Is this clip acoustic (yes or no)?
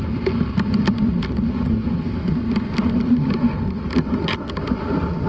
yes